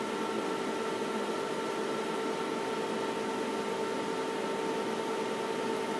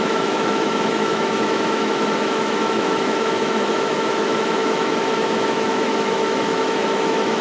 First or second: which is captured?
first